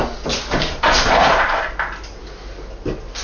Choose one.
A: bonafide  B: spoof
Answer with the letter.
A